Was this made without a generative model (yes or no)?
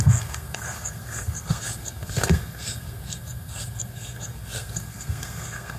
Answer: no